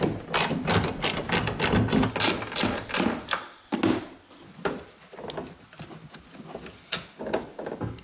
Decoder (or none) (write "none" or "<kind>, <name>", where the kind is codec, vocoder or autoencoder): none